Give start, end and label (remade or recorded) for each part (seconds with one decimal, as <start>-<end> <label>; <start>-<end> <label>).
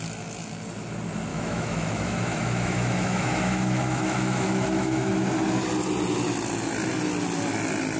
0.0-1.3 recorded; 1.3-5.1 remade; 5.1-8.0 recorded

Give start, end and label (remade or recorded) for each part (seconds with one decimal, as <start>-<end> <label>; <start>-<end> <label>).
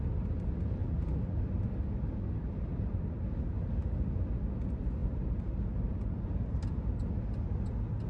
0.0-0.8 recorded; 0.8-1.4 remade; 1.4-8.1 recorded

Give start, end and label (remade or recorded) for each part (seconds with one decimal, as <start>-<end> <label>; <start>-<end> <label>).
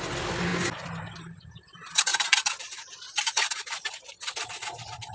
0.0-2.1 recorded; 2.1-3.9 remade; 3.9-5.1 recorded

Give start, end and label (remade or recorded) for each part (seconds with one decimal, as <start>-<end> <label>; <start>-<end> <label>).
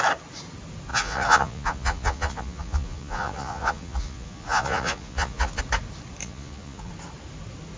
0.0-0.9 recorded; 0.9-5.6 remade; 5.6-6.2 recorded; 6.2-6.9 remade; 6.9-7.8 recorded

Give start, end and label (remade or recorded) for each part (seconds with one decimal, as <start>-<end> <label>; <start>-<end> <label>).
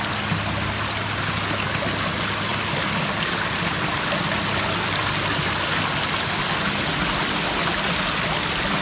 0.0-8.8 recorded